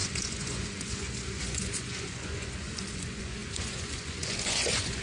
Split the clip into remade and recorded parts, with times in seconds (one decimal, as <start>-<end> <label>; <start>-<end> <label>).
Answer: 0.0-5.0 remade